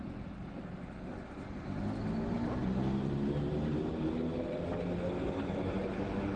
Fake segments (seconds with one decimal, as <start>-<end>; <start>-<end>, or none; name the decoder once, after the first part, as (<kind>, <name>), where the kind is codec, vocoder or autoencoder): none

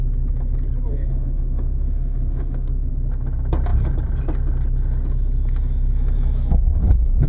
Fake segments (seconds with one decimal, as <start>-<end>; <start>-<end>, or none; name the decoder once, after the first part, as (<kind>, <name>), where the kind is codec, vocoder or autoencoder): 0.9-2.9 (autoencoder, DAC-VAE)

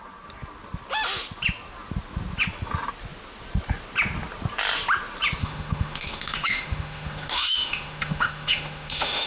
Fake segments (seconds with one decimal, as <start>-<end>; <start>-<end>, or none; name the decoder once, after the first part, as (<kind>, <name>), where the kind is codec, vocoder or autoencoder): 5.4-9.3 (autoencoder, DAC-VAE)

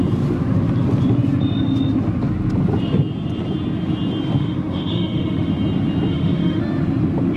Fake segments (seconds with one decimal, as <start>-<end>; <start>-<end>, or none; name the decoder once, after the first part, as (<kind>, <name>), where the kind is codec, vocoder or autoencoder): 4.4-5.5 (autoencoder, DAC-VAE); 6.1-6.6